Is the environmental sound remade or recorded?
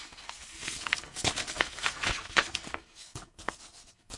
remade